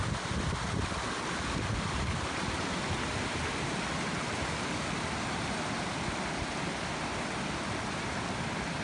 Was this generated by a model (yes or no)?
no